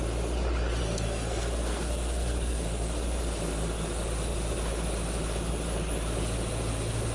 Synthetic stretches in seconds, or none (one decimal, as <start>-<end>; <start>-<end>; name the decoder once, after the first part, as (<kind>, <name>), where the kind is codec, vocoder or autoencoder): 0.8-3.0 (codec, SNAC)